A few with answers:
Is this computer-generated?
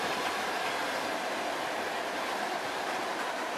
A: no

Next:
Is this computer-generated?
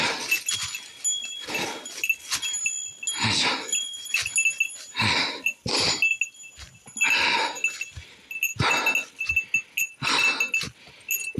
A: no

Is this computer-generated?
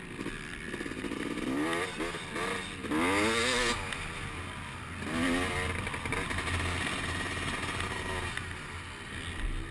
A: no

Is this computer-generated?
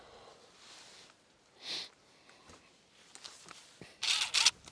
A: no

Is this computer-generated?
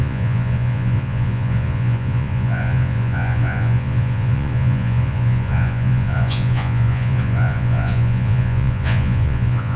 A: yes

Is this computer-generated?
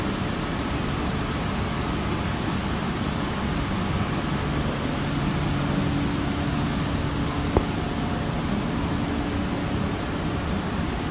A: no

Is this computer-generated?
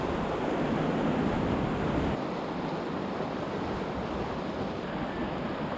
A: no